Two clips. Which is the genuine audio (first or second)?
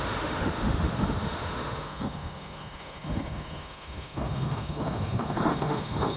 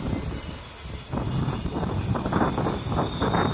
second